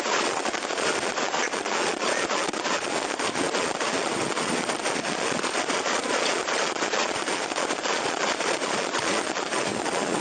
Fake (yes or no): yes